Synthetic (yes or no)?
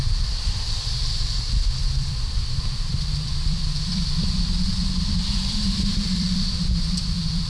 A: yes